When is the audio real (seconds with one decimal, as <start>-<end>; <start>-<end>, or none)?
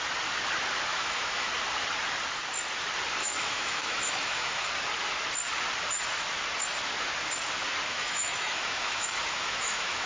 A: 0.0-0.9; 1.5-3.2; 4.7-7.9